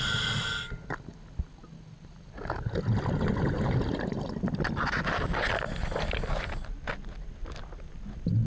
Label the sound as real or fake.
real